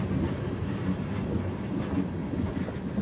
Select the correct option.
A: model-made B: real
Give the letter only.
B